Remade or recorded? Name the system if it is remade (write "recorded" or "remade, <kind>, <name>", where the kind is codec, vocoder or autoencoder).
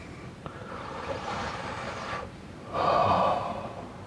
remade, vocoder, BigVGAN v2